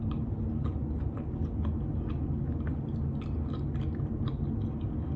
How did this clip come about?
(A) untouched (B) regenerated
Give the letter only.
A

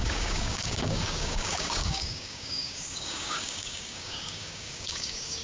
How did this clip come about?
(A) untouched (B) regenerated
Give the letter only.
B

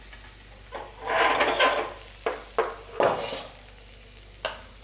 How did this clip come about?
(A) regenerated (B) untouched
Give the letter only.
B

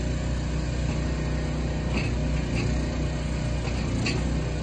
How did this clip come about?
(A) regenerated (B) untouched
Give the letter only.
B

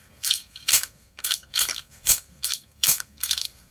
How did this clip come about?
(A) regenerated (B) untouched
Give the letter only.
A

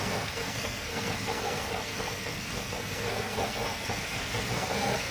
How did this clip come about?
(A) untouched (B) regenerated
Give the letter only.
B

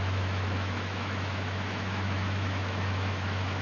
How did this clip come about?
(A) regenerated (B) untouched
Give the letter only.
A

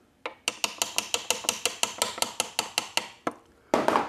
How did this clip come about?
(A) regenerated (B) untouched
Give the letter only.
B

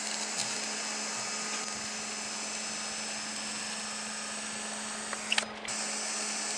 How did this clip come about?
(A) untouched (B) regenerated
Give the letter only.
A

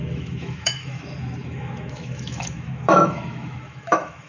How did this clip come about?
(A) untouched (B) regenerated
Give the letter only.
B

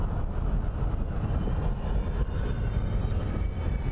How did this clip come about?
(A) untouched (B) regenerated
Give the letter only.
A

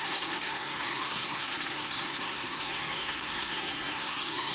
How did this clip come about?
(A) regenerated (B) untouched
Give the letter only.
A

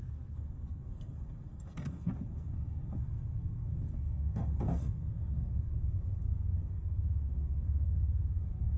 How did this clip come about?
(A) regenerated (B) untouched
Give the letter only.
A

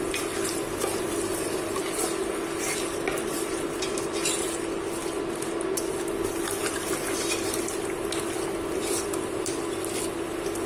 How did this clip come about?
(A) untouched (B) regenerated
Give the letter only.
A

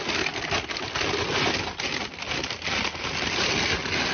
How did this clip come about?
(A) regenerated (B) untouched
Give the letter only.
B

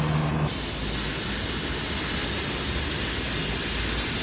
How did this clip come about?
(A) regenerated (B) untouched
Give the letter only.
B